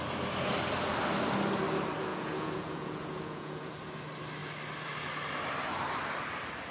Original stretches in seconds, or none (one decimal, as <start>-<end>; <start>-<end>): 0.0-2.1; 3.7-6.7